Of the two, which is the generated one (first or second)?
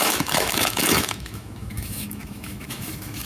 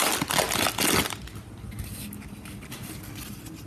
first